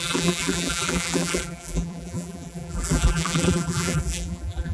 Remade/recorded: remade